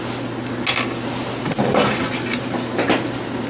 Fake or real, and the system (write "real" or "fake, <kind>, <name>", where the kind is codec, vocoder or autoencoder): real